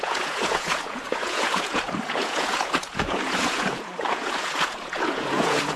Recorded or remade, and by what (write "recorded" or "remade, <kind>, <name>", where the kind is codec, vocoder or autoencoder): remade, vocoder, Vocos